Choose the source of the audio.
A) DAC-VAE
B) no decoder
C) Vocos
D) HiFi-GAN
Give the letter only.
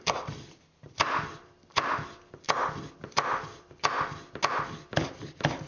B